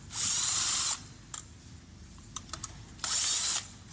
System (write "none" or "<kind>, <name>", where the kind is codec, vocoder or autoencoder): vocoder, BigVGAN v2